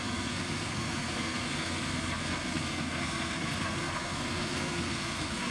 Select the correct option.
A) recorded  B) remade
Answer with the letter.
B